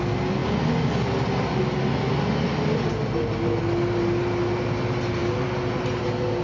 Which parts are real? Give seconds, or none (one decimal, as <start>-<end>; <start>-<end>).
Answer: 0.0-6.4